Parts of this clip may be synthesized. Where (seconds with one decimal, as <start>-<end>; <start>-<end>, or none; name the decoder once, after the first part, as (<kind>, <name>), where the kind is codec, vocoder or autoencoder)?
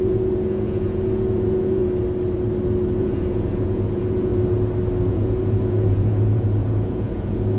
0.0-1.8 (vocoder, Vocos); 3.0-4.3; 5.1-7.6